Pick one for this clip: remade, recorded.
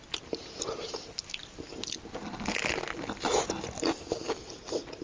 recorded